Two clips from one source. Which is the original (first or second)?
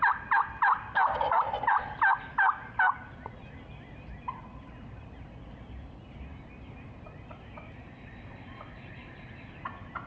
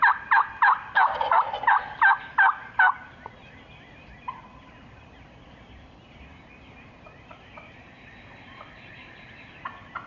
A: first